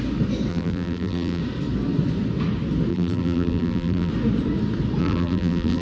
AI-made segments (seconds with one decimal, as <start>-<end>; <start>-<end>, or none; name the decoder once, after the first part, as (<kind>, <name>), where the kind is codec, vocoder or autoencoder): 0.5-1.4 (vocoder, BigVGAN v2); 2.9-4.1; 5.0-5.8